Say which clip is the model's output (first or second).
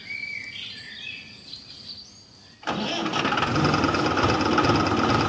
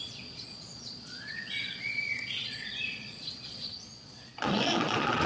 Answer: second